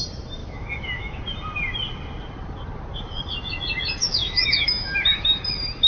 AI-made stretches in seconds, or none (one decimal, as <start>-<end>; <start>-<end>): 0.4-1.2; 4.0-5.3